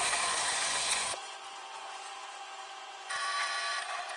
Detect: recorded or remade remade